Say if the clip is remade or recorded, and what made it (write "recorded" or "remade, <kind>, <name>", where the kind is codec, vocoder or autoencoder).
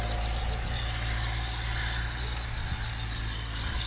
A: recorded